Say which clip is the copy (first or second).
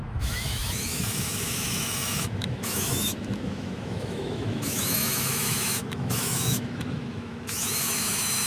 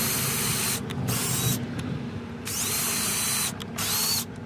first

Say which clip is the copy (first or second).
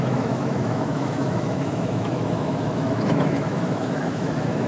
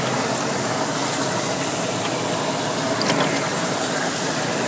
first